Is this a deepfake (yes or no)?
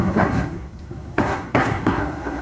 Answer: yes